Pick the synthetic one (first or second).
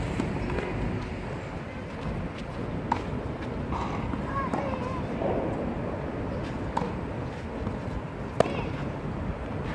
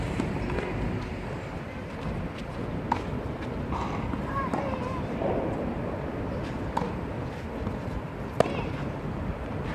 second